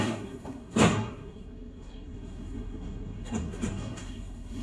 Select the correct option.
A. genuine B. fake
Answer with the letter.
B